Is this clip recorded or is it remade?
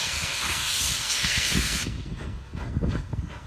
remade